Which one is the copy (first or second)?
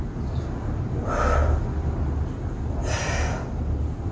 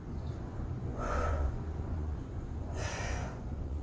second